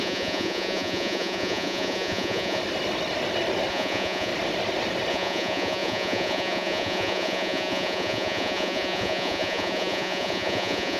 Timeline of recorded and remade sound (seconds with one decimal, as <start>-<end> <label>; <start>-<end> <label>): 0.0-2.6 remade; 2.6-3.7 recorded; 3.7-4.3 remade; 4.3-5.1 recorded; 5.1-11.0 remade